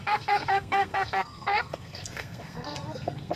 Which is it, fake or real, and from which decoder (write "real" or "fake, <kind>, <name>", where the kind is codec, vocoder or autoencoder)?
fake, codec, SNAC